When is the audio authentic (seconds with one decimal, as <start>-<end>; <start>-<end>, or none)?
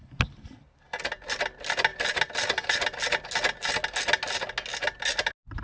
0.0-5.6